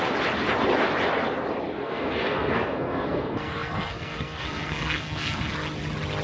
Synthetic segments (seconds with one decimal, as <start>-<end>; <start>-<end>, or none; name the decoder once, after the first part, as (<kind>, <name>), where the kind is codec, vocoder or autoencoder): 1.8-5.5 (codec, SNAC)